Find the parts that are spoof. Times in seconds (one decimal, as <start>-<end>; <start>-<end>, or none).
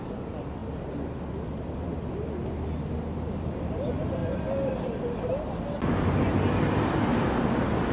none